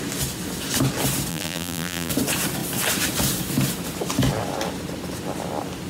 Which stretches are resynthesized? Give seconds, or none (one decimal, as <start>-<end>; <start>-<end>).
1.3-2.1